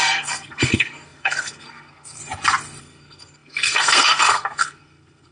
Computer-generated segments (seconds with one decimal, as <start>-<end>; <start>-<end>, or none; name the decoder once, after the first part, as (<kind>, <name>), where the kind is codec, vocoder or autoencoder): 0.0-2.2 (codec, SNAC); 2.8-5.3